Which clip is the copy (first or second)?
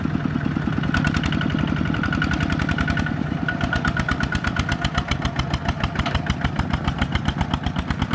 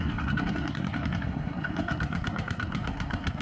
second